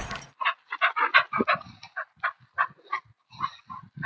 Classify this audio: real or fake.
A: real